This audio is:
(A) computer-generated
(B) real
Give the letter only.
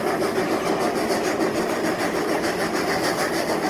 B